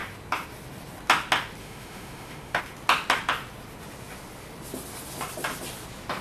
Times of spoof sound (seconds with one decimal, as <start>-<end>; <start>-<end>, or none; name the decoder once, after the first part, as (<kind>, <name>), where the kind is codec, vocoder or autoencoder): 1.6-2.6 (autoencoder, DAC-VAE)